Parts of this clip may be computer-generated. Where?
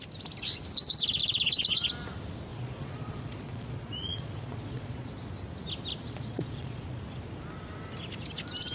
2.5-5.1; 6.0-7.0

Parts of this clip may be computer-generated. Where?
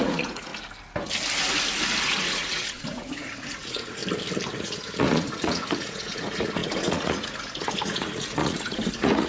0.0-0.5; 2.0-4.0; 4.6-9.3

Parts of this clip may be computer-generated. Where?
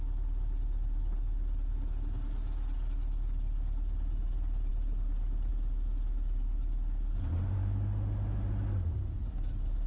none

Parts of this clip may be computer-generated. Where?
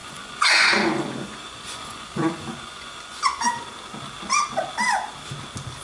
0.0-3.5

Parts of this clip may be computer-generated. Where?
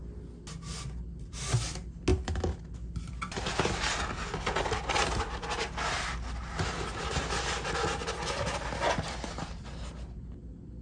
none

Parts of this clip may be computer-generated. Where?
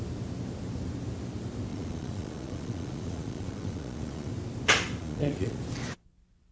1.7-4.3; 5.0-5.6